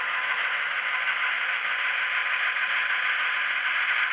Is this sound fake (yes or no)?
no